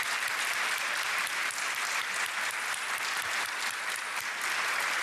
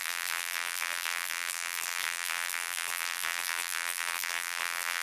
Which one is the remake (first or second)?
second